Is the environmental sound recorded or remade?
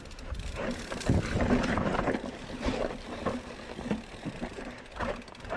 remade